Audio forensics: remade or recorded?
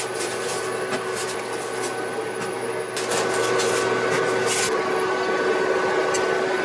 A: recorded